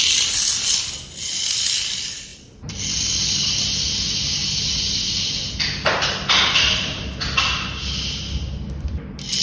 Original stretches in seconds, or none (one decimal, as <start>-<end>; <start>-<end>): 0.0-9.4